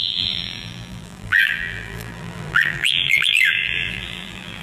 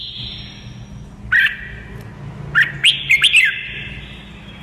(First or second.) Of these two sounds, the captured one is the second